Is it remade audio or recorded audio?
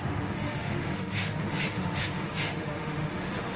remade